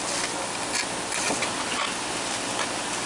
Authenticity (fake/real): real